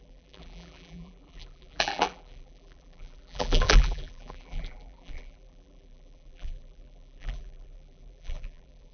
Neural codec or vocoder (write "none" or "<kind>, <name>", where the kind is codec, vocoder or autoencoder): vocoder, BigVGAN v2